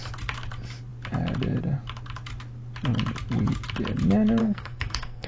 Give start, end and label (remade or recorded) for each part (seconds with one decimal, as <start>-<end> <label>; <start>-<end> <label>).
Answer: 0.0-4.4 recorded; 4.4-5.3 remade